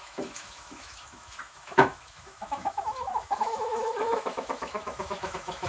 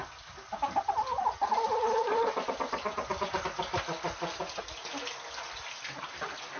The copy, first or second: first